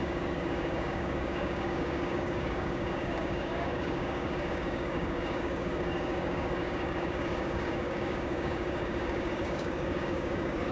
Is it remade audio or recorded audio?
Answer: remade